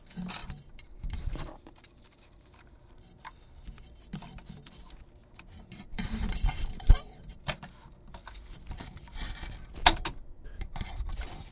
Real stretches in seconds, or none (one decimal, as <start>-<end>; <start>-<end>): 0.0-0.4; 3.2-5.9; 7.6-11.5